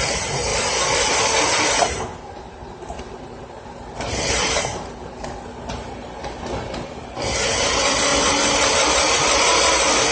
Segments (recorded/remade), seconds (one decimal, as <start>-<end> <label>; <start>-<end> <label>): 0.0-10.1 recorded